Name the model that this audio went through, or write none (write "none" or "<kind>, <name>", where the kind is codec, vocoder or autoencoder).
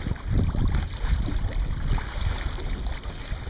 vocoder, BigVGAN v2